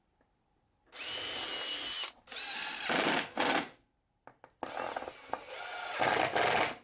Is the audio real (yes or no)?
yes